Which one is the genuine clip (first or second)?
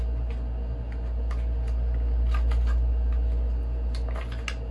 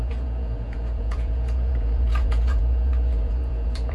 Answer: first